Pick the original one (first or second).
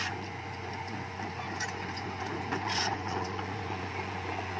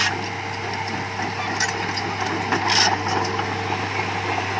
second